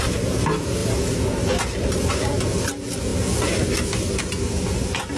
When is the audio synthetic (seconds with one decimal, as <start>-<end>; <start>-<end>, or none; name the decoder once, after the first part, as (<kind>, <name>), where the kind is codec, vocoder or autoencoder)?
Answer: none